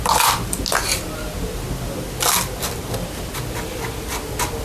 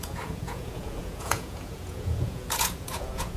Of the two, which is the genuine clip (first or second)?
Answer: first